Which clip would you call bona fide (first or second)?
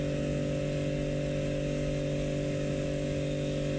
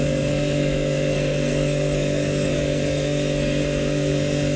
first